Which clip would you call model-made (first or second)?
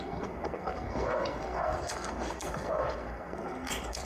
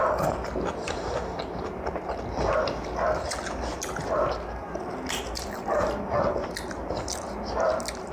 first